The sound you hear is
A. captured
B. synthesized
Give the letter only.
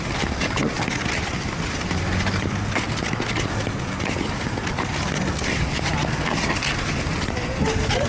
A